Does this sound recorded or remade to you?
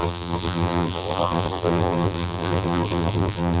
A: remade